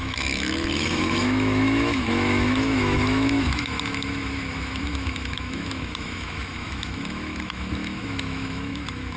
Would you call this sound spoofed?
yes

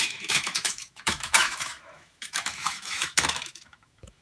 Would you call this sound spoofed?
yes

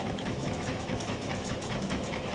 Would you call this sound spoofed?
yes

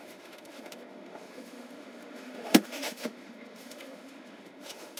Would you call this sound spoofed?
yes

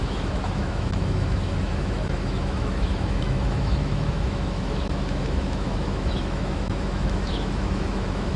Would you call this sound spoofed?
yes